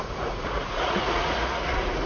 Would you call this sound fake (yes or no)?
yes